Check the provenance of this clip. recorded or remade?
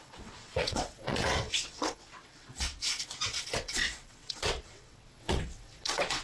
remade